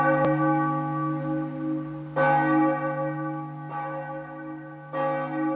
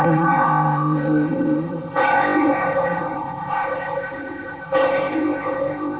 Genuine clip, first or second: first